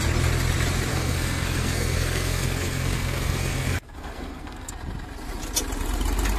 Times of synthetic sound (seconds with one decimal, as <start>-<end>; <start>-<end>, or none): 0.9-4.7